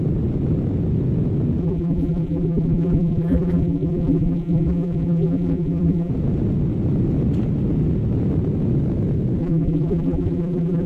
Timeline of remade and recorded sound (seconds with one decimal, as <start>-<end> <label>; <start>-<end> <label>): 0.0-1.6 recorded; 1.6-6.1 remade; 6.1-9.4 recorded; 9.4-10.9 remade